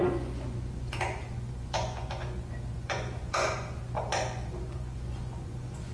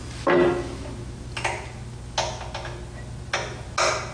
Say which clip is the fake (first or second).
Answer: first